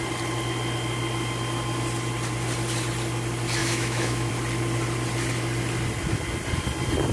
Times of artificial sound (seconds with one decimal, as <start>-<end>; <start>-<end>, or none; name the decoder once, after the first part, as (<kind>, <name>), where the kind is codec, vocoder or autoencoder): 3.6-4.3 (autoencoder, DAC-VAE)